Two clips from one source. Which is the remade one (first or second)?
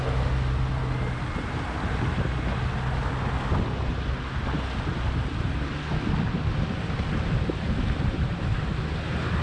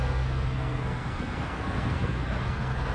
second